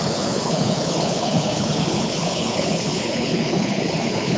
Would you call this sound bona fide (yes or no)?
no